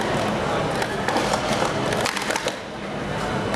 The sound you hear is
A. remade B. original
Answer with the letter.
B